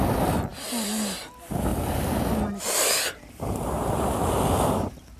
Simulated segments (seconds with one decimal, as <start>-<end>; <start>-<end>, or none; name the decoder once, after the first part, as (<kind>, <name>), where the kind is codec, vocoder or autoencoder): none